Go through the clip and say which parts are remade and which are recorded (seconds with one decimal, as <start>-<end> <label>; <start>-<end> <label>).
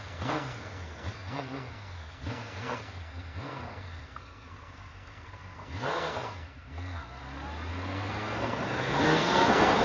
0.0-7.2 remade; 7.2-7.7 recorded; 7.7-9.8 remade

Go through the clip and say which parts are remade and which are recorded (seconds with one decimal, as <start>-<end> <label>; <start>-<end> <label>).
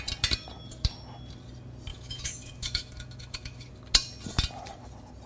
0.0-1.9 recorded; 1.9-3.7 remade; 3.7-5.3 recorded